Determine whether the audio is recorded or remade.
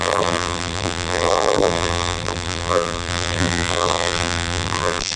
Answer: remade